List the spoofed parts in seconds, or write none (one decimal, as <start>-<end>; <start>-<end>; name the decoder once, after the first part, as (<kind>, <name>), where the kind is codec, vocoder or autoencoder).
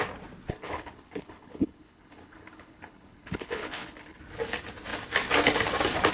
0.5-4.2 (codec, HILCodec)